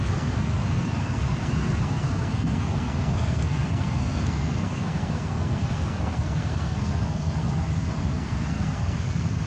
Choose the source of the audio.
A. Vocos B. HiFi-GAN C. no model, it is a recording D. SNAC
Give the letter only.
D